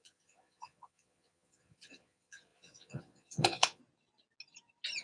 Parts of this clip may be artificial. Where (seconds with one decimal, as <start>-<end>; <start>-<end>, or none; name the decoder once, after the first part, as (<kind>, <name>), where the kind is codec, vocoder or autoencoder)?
0.0-3.8 (vocoder, Vocos)